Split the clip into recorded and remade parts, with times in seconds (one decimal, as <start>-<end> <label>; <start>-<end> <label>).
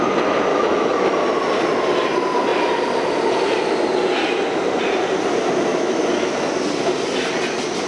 0.0-0.5 recorded; 0.5-1.1 remade; 1.1-5.7 recorded; 5.7-6.3 remade; 6.3-7.9 recorded